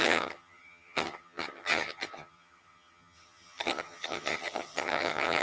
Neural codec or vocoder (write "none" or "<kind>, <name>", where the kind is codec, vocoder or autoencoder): vocoder, HiFi-GAN